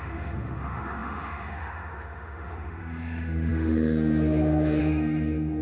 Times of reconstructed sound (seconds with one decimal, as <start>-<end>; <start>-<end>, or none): 0.0-5.6